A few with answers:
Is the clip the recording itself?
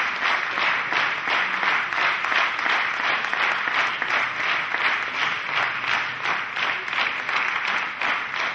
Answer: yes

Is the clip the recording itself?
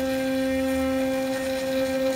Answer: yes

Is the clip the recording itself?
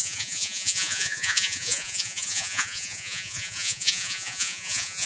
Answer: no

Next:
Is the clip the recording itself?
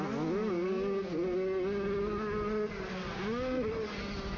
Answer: yes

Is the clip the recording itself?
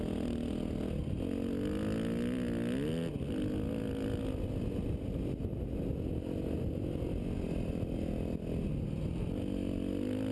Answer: yes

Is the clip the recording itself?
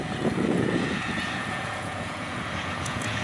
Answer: no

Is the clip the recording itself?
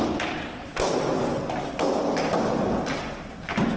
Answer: yes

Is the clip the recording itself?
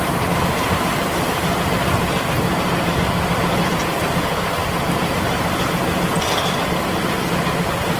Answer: yes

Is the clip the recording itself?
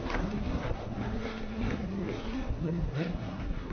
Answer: no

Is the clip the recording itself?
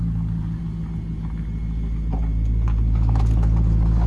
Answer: yes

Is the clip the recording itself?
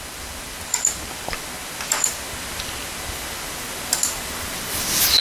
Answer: yes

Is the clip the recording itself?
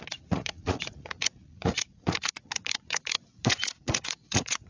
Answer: no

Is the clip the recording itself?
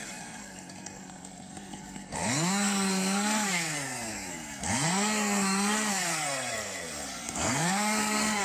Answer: no